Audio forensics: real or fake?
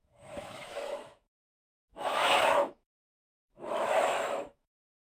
fake